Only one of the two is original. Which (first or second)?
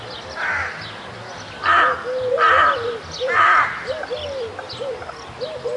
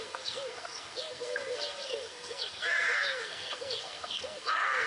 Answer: first